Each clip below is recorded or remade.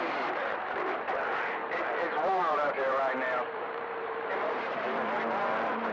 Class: remade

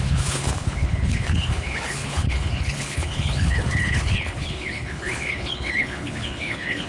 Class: remade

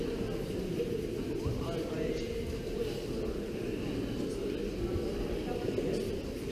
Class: recorded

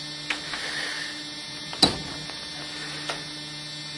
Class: recorded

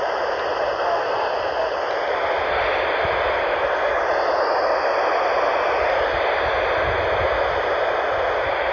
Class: recorded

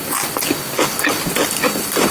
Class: recorded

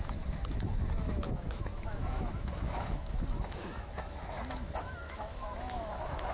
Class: remade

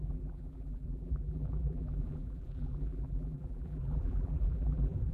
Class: remade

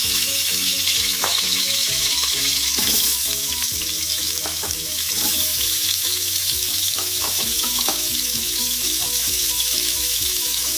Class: remade